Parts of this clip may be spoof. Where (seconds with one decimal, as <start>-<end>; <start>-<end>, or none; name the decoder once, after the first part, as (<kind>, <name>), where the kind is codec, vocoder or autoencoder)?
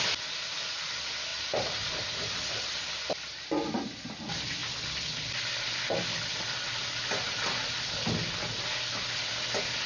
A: none